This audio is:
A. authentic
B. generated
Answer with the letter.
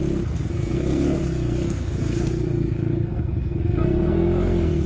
B